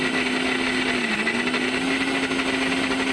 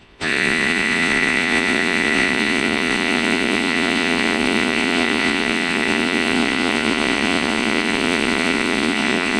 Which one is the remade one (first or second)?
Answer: second